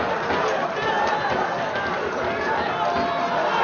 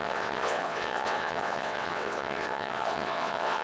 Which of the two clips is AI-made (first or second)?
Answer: second